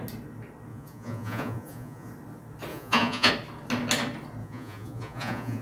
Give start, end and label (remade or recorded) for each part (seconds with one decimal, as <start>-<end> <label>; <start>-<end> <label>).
0.0-0.7 recorded; 0.7-2.1 remade; 2.1-2.7 recorded; 2.7-3.3 remade; 3.3-4.4 recorded; 4.4-5.6 remade